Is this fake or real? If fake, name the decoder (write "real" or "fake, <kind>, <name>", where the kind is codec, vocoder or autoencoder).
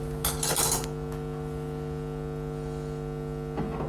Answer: real